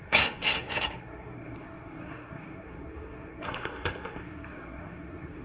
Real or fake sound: fake